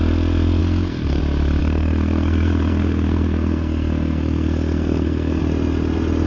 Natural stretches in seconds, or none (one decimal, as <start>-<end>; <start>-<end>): 0.0-0.6; 1.2-1.6; 5.4-6.3